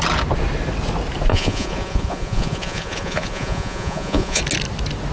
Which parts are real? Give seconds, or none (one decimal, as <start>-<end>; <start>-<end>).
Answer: 0.0-1.3; 4.4-5.1